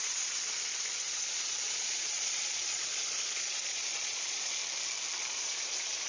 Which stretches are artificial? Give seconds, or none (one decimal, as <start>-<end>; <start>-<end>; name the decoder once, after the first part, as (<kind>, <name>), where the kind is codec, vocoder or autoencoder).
0.0-4.6 (vocoder, Vocos); 5.3-6.1